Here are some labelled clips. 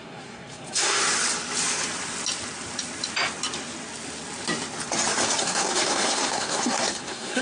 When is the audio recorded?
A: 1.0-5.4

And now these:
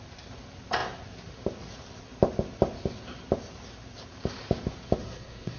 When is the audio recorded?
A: 0.0-5.0

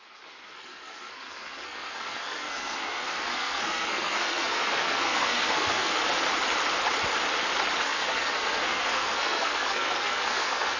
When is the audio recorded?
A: 6.0-7.8

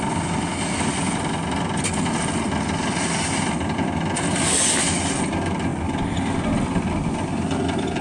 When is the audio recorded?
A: 0.0-8.0

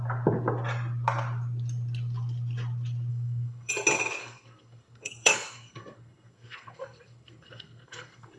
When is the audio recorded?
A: 0.0-3.1; 3.7-4.2

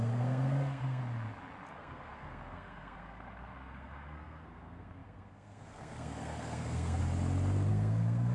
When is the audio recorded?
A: 1.0-1.7; 7.0-7.7